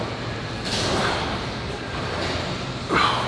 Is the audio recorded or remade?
recorded